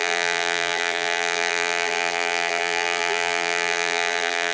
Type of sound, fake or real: fake